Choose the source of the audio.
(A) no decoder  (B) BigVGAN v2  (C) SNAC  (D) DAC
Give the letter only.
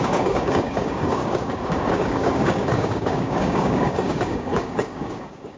D